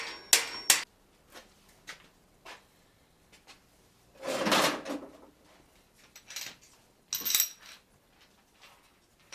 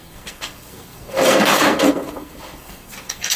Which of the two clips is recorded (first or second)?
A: first